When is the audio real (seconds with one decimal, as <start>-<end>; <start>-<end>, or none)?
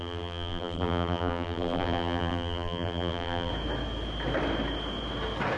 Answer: 3.5-5.6